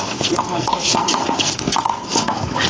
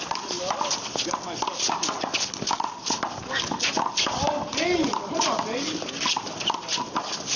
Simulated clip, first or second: first